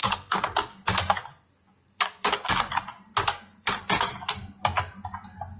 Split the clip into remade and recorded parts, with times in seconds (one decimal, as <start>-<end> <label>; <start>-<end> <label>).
0.0-2.3 remade; 2.3-3.5 recorded; 3.5-4.1 remade; 4.1-5.6 recorded